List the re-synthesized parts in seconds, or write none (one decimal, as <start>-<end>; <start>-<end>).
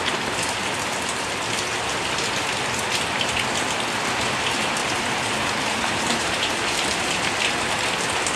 4.8-7.2